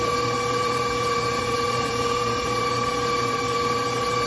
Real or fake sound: fake